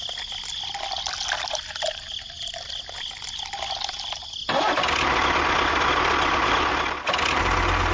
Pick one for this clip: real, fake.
real